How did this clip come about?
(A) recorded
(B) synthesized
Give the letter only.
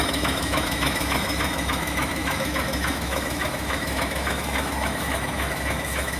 B